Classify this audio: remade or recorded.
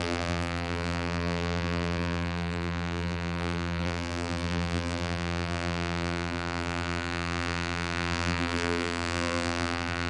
remade